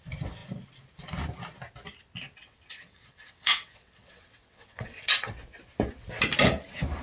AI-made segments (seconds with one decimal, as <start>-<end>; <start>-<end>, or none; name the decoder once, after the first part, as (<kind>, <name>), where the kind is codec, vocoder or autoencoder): 2.4-5.3 (vocoder, WaveNeXt)